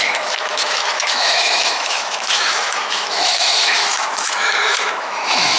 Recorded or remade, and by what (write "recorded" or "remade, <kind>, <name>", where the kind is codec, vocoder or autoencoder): remade, autoencoder, DAC-VAE